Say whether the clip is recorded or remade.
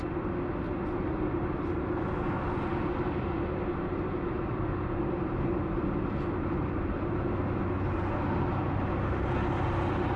recorded